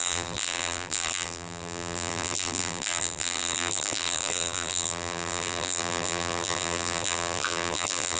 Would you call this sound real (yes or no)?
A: no